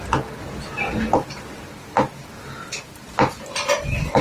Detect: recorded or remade recorded